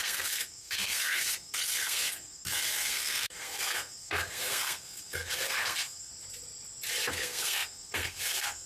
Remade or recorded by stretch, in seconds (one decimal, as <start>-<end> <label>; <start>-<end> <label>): 0.0-6.1 remade; 6.1-7.1 recorded; 7.1-8.7 remade